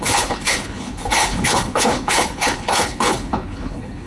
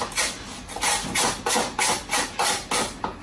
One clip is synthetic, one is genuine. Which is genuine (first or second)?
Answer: second